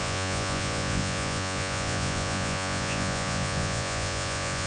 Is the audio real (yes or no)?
no